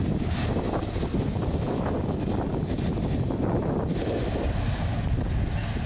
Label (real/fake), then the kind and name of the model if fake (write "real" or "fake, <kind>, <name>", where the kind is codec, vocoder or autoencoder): real